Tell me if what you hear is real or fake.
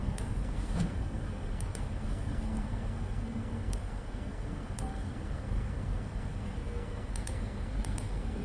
fake